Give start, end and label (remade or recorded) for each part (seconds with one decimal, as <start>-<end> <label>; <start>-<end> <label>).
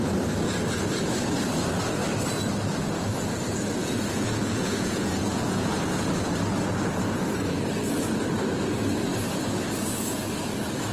0.0-3.8 recorded; 3.8-5.7 remade; 5.7-10.9 recorded